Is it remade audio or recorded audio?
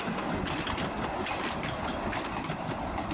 recorded